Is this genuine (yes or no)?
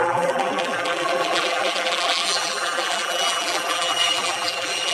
no